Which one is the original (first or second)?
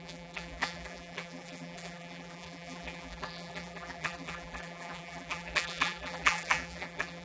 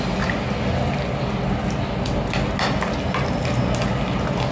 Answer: second